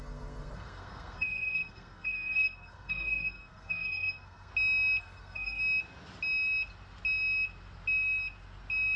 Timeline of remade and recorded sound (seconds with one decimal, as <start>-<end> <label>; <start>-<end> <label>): 0.0-4.5 remade; 4.5-5.0 recorded; 5.0-5.6 remade; 5.6-9.0 recorded